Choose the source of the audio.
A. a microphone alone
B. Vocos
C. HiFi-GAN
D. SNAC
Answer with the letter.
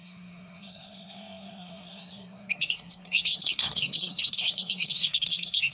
D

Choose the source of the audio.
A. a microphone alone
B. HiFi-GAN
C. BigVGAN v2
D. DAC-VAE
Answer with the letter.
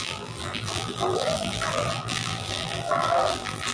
C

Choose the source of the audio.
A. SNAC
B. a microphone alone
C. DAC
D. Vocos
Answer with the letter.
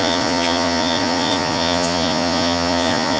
D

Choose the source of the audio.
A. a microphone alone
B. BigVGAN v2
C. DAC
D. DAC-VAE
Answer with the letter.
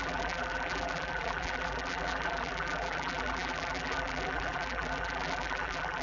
B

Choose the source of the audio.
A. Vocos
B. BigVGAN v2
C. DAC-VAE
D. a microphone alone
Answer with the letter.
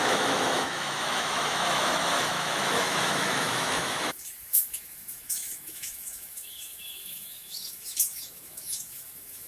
C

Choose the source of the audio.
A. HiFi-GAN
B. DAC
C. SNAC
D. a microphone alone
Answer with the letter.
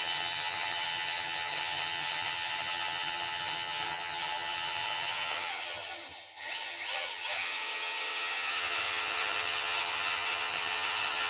A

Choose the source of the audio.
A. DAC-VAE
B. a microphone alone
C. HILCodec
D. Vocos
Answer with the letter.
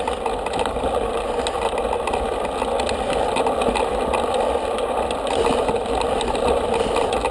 B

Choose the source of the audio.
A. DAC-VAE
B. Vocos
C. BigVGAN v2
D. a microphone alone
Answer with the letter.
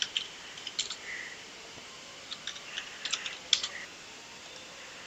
D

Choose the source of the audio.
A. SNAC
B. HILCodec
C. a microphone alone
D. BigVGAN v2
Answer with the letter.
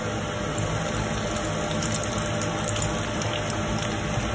C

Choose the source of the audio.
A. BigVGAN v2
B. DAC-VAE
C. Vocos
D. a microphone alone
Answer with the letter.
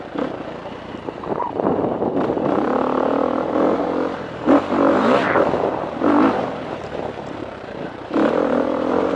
A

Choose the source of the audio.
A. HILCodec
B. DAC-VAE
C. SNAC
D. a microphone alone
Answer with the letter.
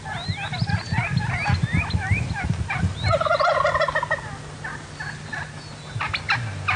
D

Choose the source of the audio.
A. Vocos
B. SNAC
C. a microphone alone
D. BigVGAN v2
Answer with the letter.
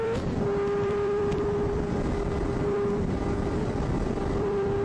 D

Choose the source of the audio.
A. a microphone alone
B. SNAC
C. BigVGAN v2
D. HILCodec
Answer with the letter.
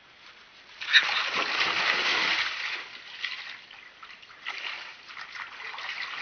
A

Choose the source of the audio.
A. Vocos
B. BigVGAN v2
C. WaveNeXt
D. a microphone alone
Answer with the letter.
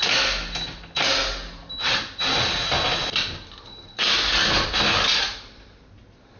D